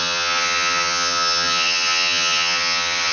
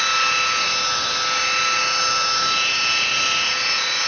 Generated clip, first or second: first